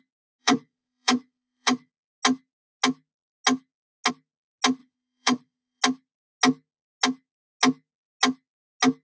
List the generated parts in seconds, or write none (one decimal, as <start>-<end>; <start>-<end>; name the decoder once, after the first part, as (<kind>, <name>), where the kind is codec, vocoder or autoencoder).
0.4-1.9 (vocoder, Vocos); 4.8-5.8

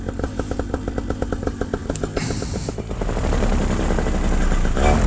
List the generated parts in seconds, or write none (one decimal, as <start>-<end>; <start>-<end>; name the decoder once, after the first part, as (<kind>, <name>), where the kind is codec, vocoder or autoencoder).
none